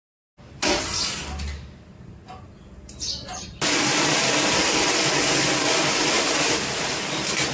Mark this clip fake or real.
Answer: real